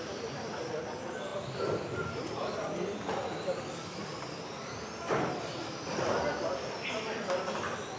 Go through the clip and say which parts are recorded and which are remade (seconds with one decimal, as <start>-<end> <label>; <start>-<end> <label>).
0.0-8.0 recorded